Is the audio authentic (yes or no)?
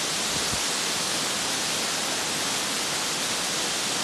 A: yes